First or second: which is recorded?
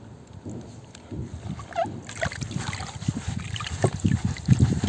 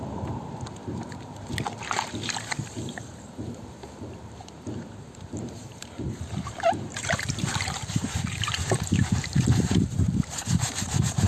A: first